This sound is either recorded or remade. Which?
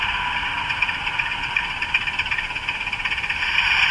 recorded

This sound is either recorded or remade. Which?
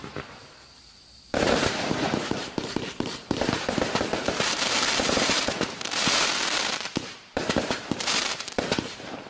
remade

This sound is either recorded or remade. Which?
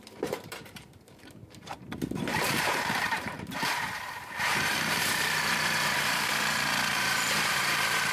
remade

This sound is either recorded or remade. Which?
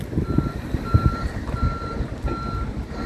recorded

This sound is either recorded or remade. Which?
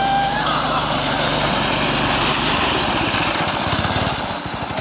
recorded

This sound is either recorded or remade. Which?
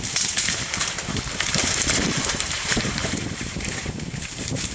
remade